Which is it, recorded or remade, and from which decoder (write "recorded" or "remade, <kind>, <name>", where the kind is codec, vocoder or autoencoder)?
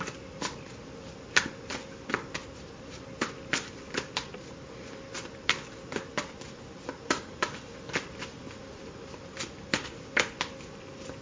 recorded